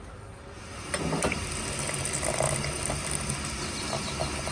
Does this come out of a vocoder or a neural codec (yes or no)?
no